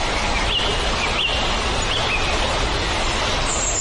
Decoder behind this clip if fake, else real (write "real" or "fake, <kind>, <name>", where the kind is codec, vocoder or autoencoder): real